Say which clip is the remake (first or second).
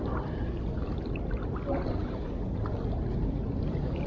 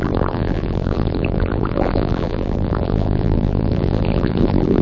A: second